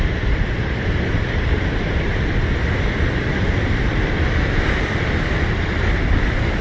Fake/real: fake